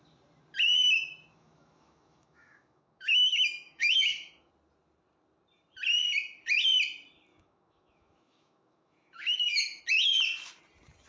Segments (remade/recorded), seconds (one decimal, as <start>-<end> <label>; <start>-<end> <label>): 0.0-1.3 recorded; 1.3-4.5 remade; 4.5-7.3 recorded; 7.3-9.8 remade; 9.8-11.1 recorded